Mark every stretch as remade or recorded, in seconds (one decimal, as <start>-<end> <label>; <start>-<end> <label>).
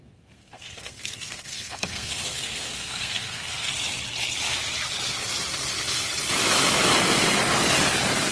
0.0-3.7 remade; 3.7-8.3 recorded